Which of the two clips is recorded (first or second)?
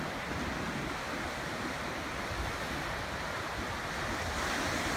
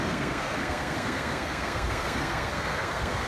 first